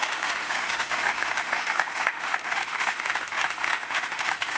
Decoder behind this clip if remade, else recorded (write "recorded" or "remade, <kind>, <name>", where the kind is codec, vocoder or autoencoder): remade, autoencoder, DAC-VAE